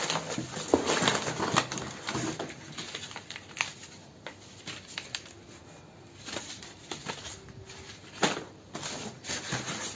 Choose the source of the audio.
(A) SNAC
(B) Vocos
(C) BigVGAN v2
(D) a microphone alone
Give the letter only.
D